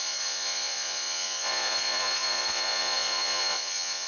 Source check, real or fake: fake